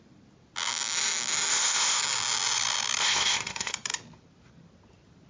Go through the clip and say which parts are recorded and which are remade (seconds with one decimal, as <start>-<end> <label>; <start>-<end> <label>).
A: 0.0-1.5 recorded; 1.5-2.0 remade; 2.0-3.0 recorded; 3.0-3.7 remade; 3.7-5.3 recorded